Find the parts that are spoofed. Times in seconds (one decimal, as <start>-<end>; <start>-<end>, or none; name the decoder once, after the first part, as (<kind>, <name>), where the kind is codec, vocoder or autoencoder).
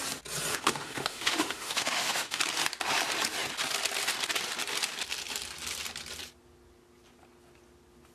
0.5-2.4 (autoencoder, DAC-VAE)